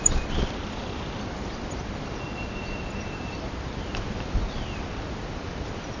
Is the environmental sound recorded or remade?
remade